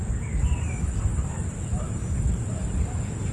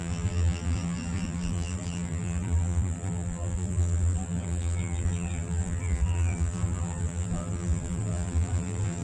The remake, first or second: second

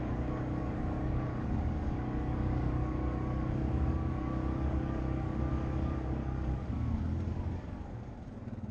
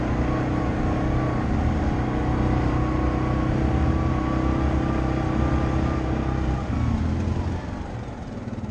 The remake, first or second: first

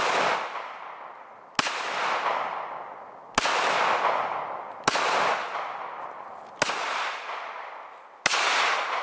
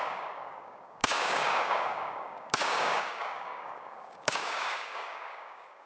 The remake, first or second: second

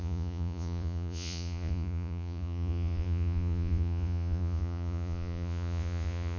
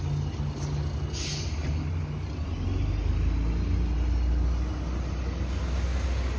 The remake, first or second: first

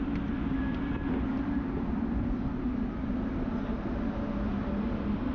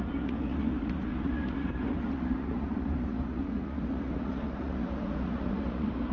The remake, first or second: second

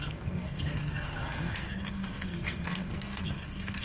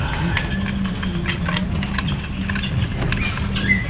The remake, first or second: first